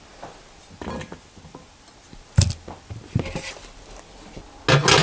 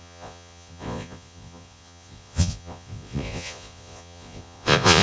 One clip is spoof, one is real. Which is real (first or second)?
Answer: first